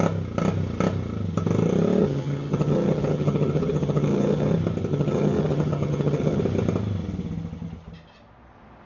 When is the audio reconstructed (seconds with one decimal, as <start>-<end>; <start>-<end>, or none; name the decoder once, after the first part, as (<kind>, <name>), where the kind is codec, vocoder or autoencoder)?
2.0-4.5 (vocoder, HiFi-GAN); 4.9-6.4